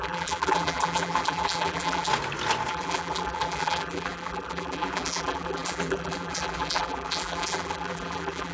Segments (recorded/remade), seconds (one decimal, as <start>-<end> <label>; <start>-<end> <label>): 0.0-2.1 remade; 2.1-2.7 recorded; 2.7-8.5 remade